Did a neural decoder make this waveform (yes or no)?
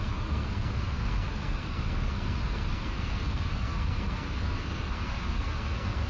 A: yes